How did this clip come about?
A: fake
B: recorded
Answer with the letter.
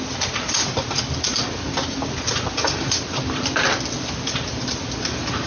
B